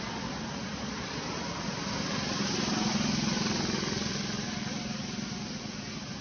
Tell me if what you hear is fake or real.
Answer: real